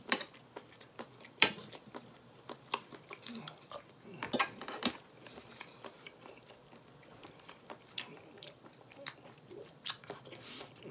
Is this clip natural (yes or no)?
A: no